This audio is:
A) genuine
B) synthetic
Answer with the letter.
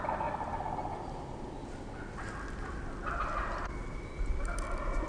A